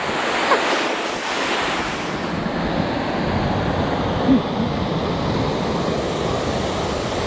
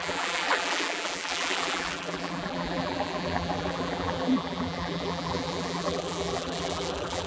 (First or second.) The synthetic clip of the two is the second